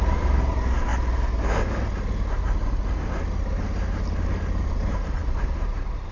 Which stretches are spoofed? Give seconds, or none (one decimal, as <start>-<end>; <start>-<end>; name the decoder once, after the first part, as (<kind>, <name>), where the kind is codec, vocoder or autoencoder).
0.0-0.9 (vocoder, BigVGAN v2); 4.6-6.1

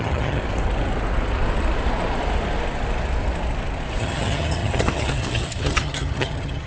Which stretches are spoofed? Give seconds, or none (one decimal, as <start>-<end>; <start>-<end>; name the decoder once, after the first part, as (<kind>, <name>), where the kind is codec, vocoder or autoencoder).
0.0-0.4 (vocoder, HiFi-GAN); 4.0-6.7

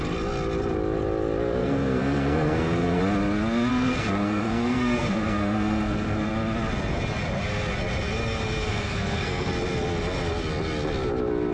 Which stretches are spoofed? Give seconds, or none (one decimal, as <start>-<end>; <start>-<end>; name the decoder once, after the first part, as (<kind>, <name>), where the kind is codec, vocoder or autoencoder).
1.6-3.0 (codec, SNAC); 3.7-6.3; 8.7-9.5

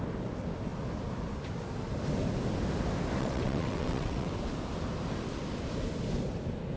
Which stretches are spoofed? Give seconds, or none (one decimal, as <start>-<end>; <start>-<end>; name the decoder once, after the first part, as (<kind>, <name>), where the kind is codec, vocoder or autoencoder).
3.2-4.3 (vocoder, WaveNeXt)

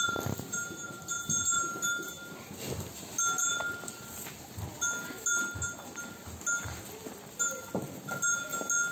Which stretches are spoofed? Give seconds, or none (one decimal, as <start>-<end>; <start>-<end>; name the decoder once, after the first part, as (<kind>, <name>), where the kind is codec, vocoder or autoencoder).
none

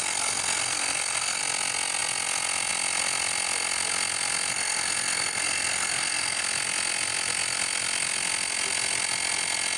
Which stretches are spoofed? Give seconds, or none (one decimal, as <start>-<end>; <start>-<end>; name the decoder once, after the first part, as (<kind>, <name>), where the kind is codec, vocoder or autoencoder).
0.0-1.4 (codec, SNAC); 4.5-6.4

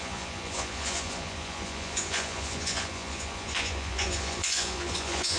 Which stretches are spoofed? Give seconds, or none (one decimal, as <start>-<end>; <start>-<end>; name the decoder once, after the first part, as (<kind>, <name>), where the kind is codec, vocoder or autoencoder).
0.0-5.4 (vocoder, Vocos)